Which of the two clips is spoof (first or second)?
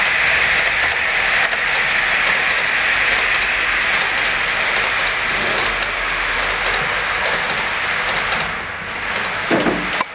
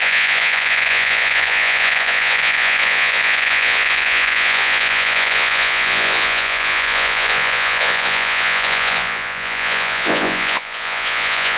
second